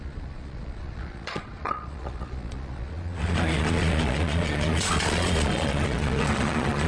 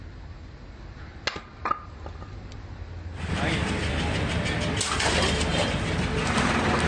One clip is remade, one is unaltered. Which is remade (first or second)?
first